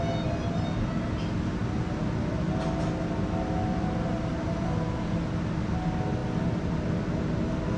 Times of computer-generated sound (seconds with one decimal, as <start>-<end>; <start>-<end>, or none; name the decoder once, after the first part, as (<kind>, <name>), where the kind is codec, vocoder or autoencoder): none